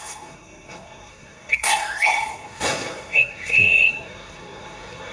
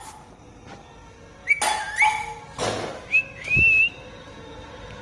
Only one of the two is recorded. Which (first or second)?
second